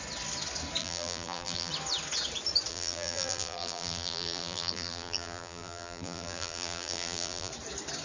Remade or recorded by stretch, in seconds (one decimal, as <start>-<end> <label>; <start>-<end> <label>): 0.0-0.8 recorded; 0.8-1.7 remade; 1.7-2.7 recorded; 2.7-7.5 remade; 7.5-8.0 recorded